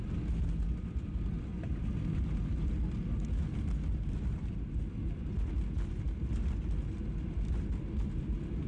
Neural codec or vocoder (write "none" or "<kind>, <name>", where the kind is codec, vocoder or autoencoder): none